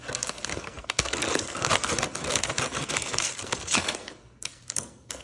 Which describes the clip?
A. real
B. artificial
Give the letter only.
B